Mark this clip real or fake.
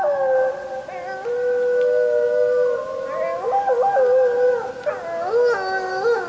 real